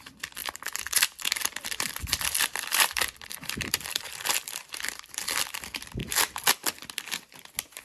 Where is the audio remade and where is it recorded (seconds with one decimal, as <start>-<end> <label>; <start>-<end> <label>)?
0.0-6.0 remade; 6.0-7.8 recorded